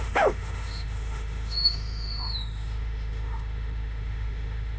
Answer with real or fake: fake